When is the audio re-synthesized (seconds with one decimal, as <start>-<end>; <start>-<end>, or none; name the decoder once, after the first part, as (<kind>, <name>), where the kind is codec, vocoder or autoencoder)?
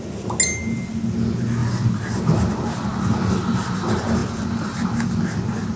1.6-2.3 (vocoder, BigVGAN v2)